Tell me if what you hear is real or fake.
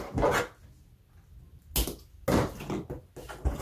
real